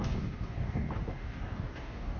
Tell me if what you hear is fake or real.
fake